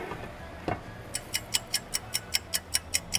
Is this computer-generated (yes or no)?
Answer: no